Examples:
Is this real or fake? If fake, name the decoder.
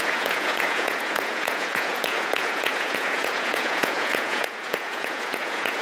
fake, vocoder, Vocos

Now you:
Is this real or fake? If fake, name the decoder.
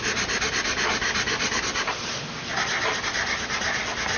real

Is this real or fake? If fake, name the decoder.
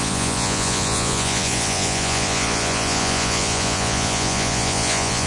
fake, vocoder, Vocos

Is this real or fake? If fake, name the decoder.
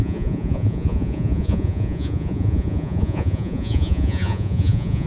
fake, vocoder, Vocos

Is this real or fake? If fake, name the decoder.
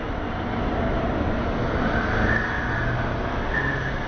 real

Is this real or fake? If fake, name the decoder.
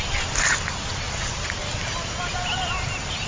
real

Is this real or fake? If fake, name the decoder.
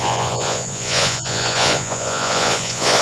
fake, vocoder, Vocos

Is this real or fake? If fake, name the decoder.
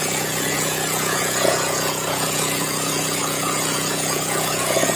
fake, vocoder, Vocos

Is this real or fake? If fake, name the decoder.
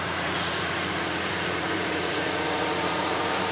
fake, vocoder, Vocos